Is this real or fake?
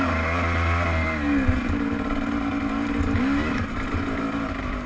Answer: real